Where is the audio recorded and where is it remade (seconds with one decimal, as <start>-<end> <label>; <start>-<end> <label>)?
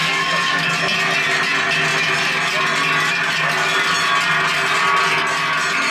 0.0-0.7 remade; 0.7-5.9 recorded